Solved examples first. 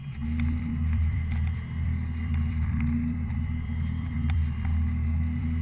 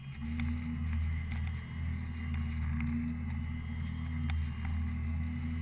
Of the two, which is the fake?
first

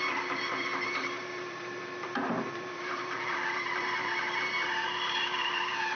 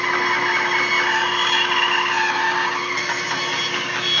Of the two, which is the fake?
first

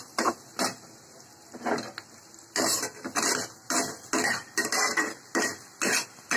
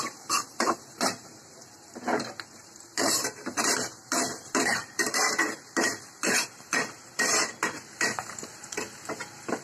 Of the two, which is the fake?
second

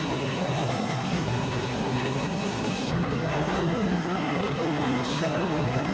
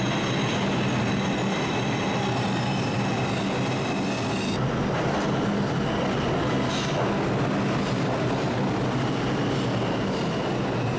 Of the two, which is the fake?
first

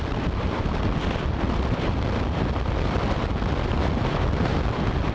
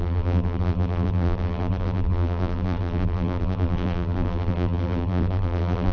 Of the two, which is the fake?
second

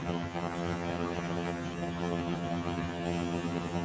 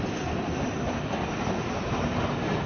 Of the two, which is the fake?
first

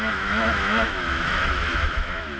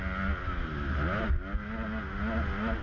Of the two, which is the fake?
first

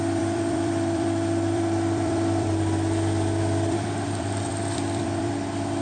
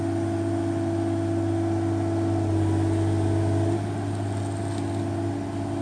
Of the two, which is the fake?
first